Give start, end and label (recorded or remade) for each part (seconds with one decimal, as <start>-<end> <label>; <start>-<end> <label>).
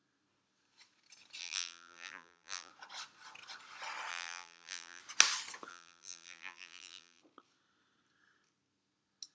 0.0-1.4 recorded; 1.4-2.7 remade; 2.7-4.1 recorded; 4.1-5.0 remade; 5.0-5.7 recorded; 5.7-7.2 remade; 7.2-9.3 recorded